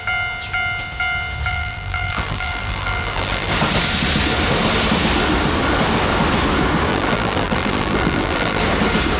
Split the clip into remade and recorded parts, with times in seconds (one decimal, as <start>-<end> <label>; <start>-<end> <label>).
0.0-1.5 recorded; 1.5-3.5 remade; 3.5-6.9 recorded; 6.9-8.6 remade; 8.6-9.2 recorded